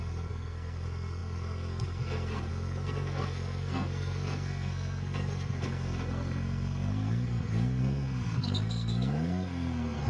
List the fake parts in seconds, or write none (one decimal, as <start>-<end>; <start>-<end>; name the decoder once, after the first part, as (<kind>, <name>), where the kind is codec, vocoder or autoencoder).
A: 0.0-10.1 (codec, SNAC)